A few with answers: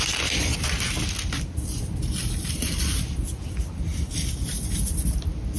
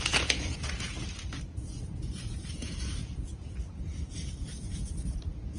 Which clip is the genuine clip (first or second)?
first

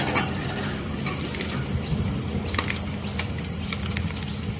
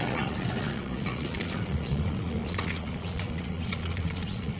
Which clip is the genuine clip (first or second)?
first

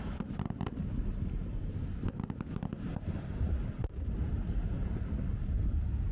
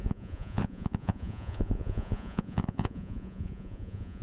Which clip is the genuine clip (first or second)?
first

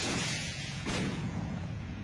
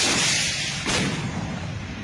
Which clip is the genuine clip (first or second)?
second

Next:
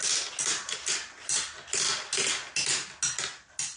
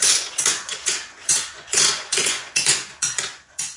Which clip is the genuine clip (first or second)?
first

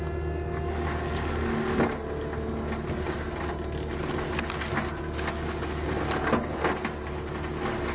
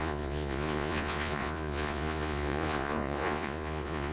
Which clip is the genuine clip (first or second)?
first